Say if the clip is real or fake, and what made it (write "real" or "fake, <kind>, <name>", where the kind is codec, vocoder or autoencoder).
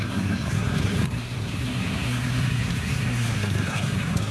fake, codec, SNAC